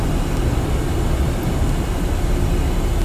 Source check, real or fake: real